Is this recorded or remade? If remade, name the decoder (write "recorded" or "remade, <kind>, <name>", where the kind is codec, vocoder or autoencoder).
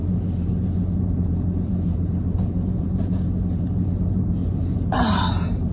remade, vocoder, BigVGAN v2